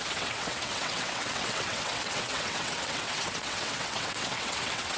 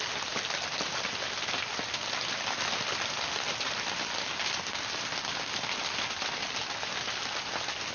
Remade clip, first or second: first